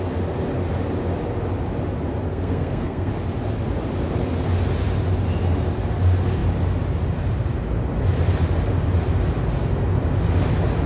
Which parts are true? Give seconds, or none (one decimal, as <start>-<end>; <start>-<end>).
0.0-2.3; 3.1-10.9